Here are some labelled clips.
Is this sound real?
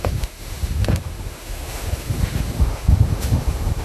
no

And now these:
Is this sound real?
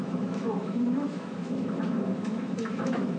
no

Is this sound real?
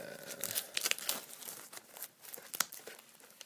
yes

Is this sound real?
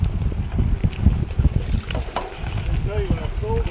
yes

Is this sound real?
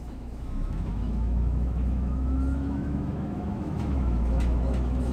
no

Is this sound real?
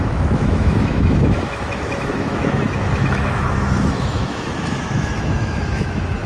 no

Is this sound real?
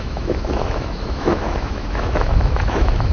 no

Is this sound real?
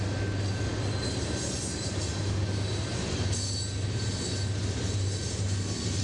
yes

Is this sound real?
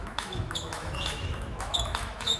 no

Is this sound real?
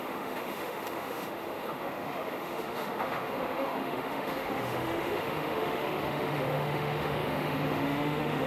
no